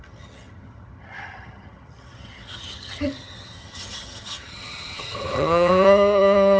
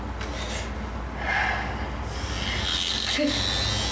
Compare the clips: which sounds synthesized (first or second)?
first